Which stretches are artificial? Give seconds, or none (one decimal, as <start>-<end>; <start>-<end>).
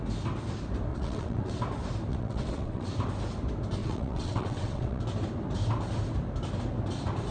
0.9-1.6; 2.1-2.9; 3.8-5.0